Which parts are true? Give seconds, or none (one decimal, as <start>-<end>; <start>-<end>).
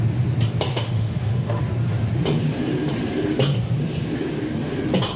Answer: 0.0-0.7; 1.6-5.2